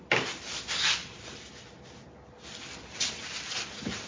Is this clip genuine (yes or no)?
yes